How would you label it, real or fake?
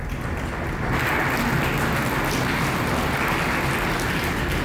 real